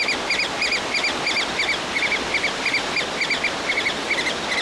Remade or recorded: recorded